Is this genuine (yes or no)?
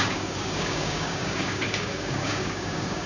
no